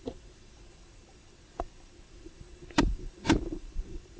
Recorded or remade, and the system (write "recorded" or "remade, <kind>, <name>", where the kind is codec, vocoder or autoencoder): remade, vocoder, BigVGAN v2